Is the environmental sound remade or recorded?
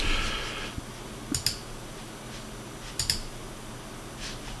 recorded